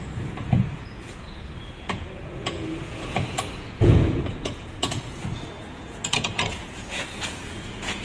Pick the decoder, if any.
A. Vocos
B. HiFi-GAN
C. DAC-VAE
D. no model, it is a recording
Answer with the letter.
A